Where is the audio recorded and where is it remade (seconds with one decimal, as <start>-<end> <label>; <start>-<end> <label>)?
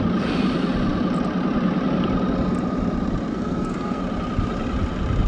0.0-3.3 recorded; 3.3-4.0 remade; 4.0-5.3 recorded